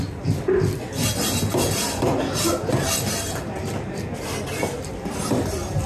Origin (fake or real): real